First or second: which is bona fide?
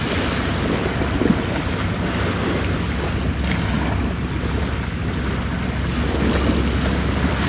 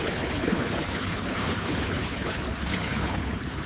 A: first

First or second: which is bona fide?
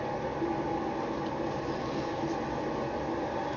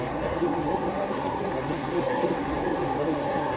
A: first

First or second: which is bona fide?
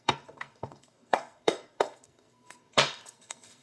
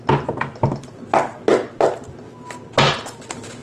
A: second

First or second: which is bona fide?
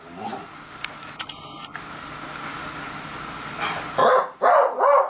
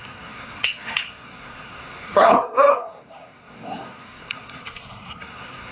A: first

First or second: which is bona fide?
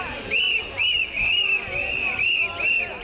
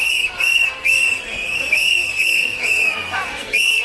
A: first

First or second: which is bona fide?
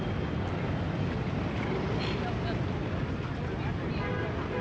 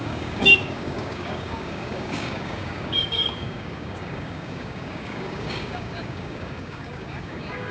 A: first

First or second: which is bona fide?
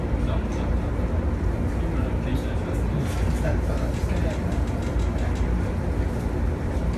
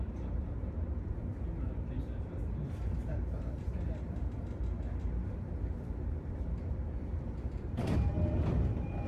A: first